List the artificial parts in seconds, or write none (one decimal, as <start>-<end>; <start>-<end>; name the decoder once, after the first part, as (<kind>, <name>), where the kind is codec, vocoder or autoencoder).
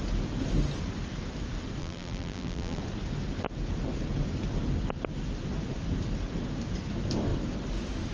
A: 1.8-2.8 (vocoder, BigVGAN v2)